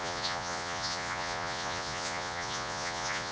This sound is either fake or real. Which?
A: fake